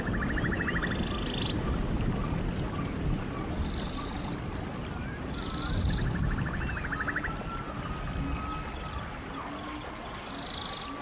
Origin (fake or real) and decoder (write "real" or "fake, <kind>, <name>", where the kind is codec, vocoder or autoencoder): real